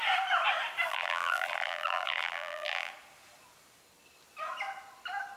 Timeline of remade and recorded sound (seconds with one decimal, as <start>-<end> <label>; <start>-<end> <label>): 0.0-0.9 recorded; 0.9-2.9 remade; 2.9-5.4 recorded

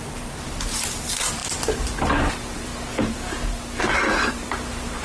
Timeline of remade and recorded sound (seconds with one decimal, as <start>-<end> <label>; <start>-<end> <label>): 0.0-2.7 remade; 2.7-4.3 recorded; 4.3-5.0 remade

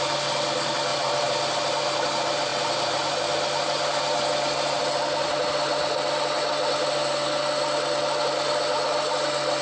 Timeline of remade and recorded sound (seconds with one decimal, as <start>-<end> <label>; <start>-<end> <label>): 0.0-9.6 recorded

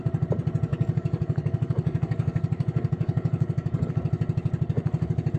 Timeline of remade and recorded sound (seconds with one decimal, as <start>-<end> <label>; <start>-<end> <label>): 0.0-0.7 recorded; 0.7-3.9 remade; 3.9-5.4 recorded